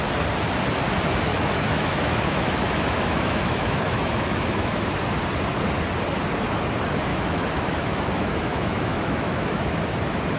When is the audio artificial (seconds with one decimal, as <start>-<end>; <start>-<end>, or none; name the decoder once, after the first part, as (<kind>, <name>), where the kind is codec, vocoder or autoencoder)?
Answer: 1.3-4.9 (autoencoder, DAC-VAE); 7.1-10.0